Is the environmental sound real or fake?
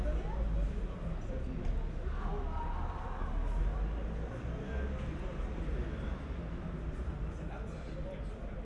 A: real